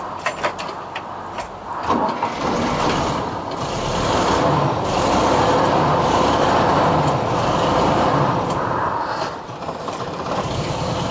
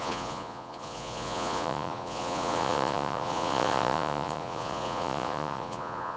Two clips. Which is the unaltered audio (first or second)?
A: first